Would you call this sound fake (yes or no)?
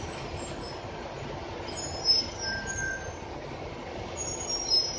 no